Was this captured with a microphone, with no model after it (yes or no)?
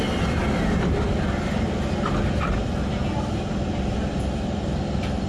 yes